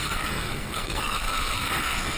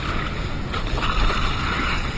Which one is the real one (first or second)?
second